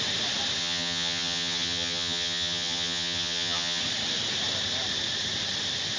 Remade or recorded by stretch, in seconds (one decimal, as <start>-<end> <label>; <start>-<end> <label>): 0.0-0.6 recorded; 0.6-3.8 remade; 3.8-6.0 recorded